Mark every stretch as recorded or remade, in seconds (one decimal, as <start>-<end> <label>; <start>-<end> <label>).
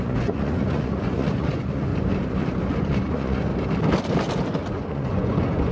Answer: 0.0-1.9 remade; 1.9-2.8 recorded; 2.8-3.5 remade; 3.5-4.7 recorded; 4.7-5.7 remade